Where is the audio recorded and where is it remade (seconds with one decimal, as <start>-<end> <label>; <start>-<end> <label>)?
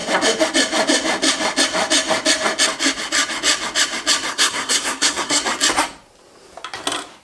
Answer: 0.0-4.3 recorded; 4.3-5.4 remade; 5.4-7.2 recorded